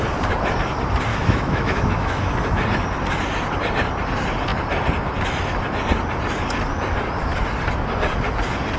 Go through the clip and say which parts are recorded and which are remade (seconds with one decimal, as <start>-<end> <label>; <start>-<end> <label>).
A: 0.0-1.1 recorded; 1.1-2.3 remade; 2.3-8.8 recorded